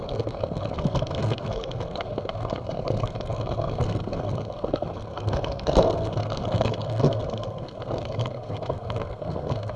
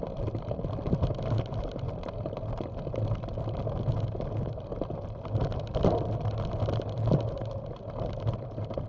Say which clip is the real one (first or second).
second